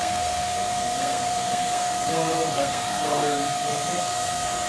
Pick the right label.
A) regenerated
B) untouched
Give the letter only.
A